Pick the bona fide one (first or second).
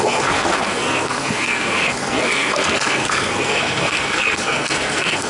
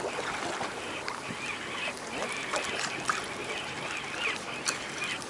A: second